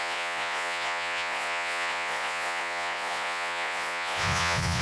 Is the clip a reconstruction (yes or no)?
yes